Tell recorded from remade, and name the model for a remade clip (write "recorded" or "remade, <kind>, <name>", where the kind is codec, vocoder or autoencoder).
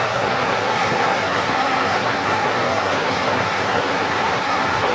remade, codec, SNAC